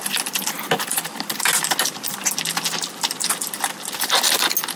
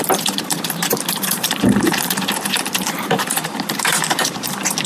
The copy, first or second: second